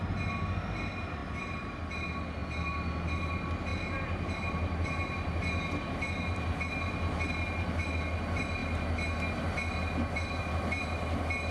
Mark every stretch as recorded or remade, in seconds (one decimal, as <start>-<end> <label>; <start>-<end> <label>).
0.0-1.2 recorded; 1.2-1.9 remade; 1.9-11.5 recorded